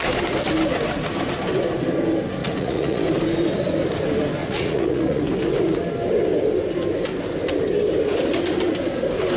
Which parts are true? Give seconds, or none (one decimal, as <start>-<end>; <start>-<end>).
0.0-2.4; 3.0-4.4; 5.2-9.4